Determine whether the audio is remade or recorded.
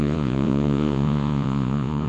remade